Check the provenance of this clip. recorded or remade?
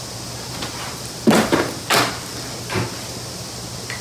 recorded